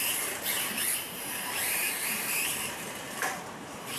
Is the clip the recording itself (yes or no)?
no